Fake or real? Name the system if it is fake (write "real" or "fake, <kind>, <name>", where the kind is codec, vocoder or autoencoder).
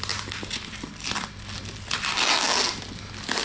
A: real